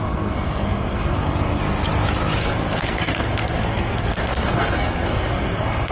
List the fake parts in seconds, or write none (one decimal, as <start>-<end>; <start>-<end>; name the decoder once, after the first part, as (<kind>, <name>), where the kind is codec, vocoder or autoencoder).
0.0-1.6 (codec, SNAC); 2.4-5.9